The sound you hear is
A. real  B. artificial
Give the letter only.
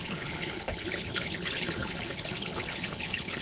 B